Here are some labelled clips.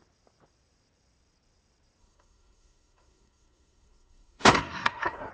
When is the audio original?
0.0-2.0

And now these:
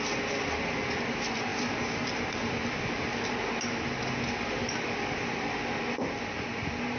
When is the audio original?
0.0-7.0

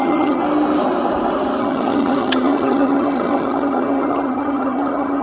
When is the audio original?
0.4-1.6

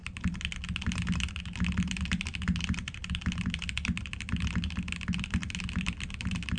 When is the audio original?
0.0-6.6